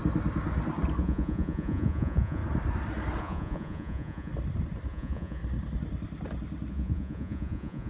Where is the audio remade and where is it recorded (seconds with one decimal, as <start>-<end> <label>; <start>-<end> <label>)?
0.0-1.0 recorded; 1.0-2.4 remade; 2.4-3.2 recorded; 3.2-4.3 remade; 4.3-4.9 recorded; 4.9-5.4 remade; 5.4-6.7 recorded; 6.7-7.9 remade